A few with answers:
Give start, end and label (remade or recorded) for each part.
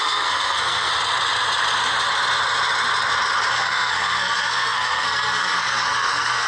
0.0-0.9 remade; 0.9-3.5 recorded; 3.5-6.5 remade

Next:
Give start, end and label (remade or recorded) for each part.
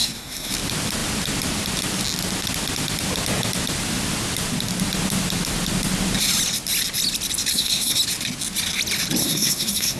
0.0-0.5 remade; 0.5-7.5 recorded; 7.5-8.0 remade; 8.0-9.2 recorded; 9.2-10.0 remade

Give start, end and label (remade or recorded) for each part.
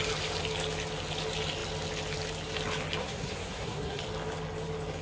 0.0-3.0 recorded; 3.0-4.0 remade; 4.0-5.0 recorded